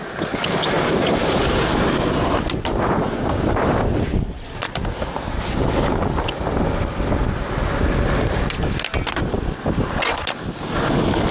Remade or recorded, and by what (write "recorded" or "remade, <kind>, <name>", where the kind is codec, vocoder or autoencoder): recorded